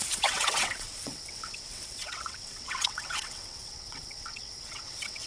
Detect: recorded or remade remade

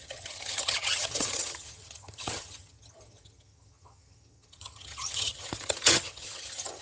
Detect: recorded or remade remade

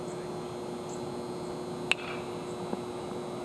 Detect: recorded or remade recorded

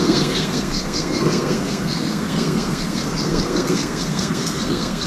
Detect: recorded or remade remade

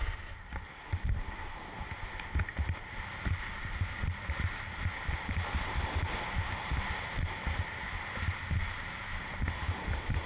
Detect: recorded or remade recorded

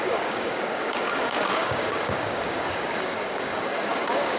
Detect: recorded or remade remade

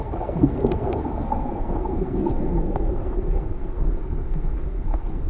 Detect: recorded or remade remade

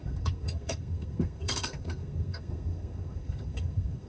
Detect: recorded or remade remade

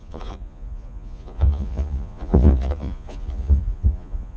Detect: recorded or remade remade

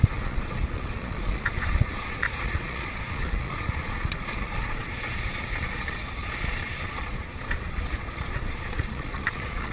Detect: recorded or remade remade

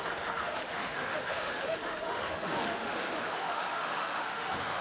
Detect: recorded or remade remade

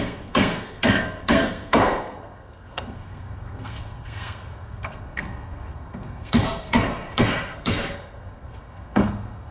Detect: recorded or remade remade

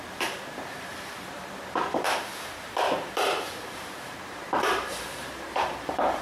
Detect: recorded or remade remade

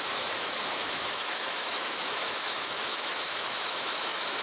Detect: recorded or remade remade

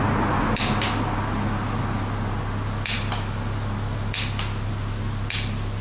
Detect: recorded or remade recorded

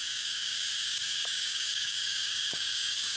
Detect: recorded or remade remade